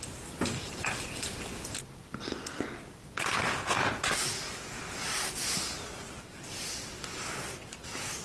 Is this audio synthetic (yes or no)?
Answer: yes